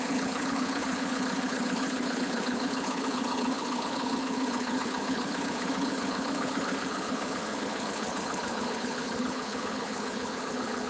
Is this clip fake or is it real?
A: fake